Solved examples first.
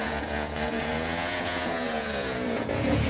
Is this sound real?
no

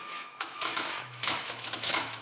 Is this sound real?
no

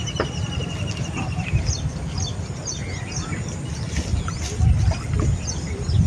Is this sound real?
yes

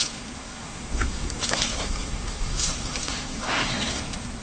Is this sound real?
no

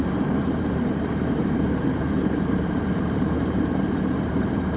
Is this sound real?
no